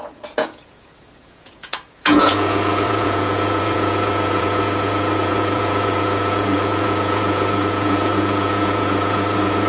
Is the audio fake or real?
fake